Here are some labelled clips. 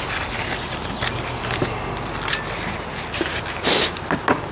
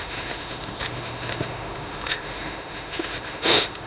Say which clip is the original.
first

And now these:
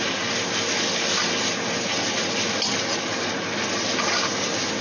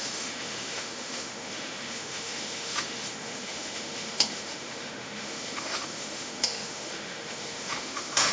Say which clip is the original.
first